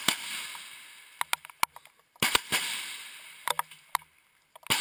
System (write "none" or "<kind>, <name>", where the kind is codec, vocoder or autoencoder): none